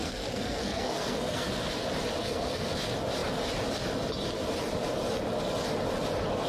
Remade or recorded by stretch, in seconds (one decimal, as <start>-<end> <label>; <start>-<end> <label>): 0.0-1.5 remade; 1.5-2.2 recorded; 2.2-2.7 remade; 2.7-6.5 recorded